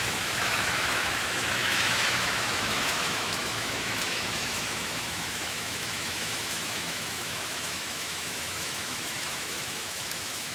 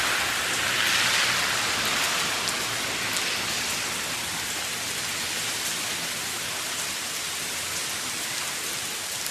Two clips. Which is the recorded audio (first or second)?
second